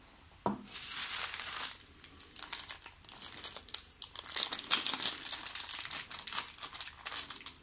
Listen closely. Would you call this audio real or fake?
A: real